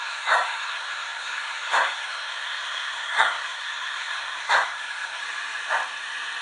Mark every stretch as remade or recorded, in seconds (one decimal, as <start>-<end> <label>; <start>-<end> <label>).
0.0-5.2 remade; 5.2-6.4 recorded